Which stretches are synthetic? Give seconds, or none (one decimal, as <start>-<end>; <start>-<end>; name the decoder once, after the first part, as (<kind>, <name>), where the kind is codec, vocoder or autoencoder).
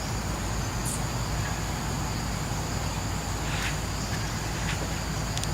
none